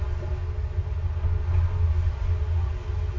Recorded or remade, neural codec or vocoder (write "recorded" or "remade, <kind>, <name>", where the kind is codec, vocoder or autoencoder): recorded